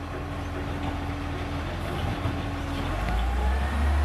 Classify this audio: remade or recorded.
recorded